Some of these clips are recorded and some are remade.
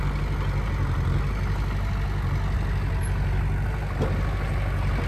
recorded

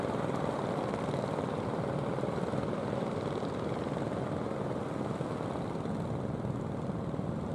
recorded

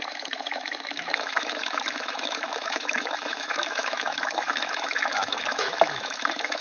remade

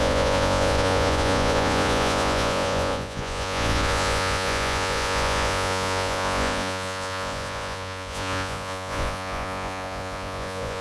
remade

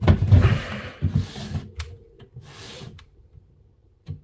recorded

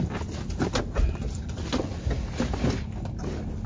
recorded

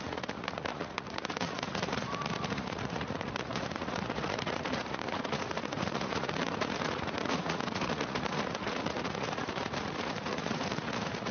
remade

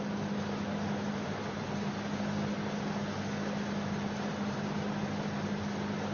recorded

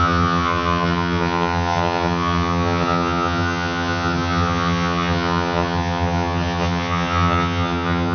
remade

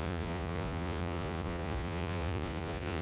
remade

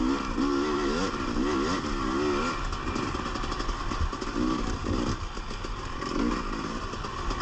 recorded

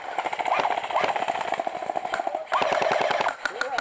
recorded